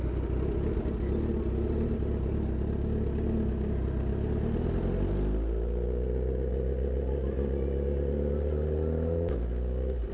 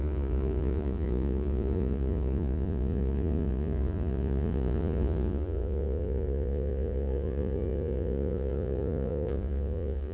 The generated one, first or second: second